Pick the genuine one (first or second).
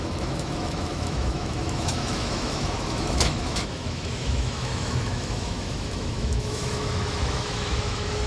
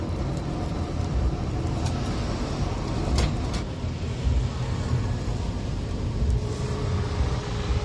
second